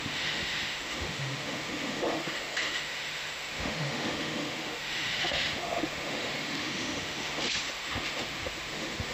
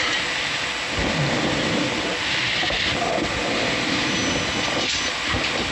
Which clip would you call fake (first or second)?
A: first